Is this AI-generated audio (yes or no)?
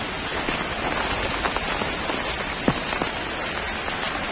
no